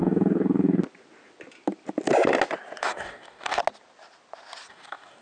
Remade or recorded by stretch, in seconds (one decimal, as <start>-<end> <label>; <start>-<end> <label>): 0.0-0.8 remade; 0.8-2.8 recorded; 2.8-3.6 remade; 3.6-4.7 recorded; 4.7-5.2 remade